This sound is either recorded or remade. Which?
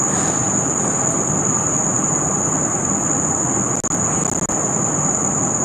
recorded